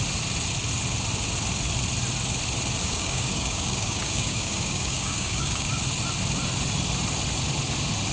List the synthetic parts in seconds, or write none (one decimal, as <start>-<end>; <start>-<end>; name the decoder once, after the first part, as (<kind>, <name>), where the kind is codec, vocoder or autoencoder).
2.8-5.8 (codec, DAC)